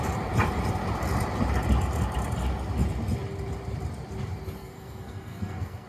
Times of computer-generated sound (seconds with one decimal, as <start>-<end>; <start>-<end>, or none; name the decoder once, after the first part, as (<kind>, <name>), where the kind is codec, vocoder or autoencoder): 4.6-5.9 (codec, SNAC)

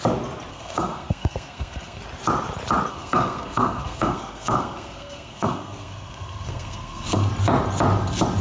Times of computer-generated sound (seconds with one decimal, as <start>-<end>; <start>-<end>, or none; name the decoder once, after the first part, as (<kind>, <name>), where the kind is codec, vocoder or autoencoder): 0.5-2.0 (codec, SNAC); 2.9-7.3

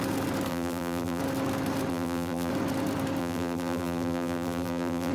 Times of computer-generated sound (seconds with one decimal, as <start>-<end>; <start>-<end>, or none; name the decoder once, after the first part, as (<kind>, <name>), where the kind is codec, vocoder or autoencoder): 0.5-1.2 (vocoder, BigVGAN v2); 1.9-2.5; 3.2-5.1

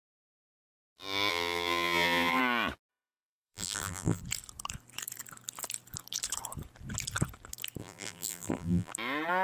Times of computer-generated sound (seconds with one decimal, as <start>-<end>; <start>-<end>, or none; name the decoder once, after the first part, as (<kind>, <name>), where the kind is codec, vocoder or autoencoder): 1.3-2.4 (vocoder, BigVGAN v2); 2.9-4.2; 7.8-8.9

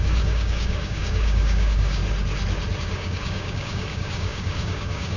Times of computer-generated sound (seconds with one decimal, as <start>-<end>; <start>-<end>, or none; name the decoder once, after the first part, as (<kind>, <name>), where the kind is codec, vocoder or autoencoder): 0.0-2.0 (codec, DAC); 2.8-5.2